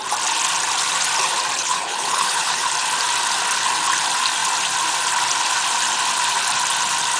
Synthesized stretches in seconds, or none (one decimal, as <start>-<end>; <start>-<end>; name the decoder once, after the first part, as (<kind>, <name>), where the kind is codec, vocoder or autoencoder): 1.6-2.7 (codec, HILCodec)